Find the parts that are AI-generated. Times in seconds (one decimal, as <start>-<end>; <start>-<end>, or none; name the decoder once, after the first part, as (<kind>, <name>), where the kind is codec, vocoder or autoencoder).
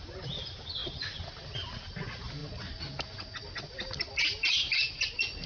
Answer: none